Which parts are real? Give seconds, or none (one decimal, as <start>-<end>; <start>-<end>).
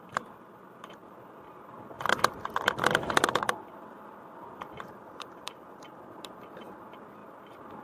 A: 1.0-3.6; 7.2-7.8